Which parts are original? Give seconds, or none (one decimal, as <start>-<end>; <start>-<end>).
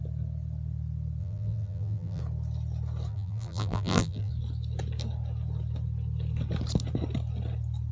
0.0-1.2; 2.2-3.1; 4.3-7.9